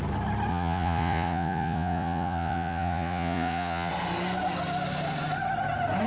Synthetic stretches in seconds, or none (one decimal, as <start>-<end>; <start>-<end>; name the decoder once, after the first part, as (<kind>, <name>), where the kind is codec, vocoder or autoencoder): 0.5-3.9 (vocoder, Vocos)